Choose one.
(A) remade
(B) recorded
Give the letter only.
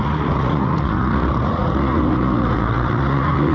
A